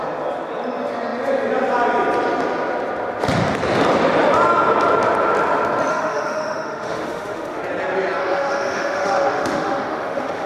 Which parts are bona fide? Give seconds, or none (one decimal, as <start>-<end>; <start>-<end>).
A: 0.0-5.9; 7.6-8.2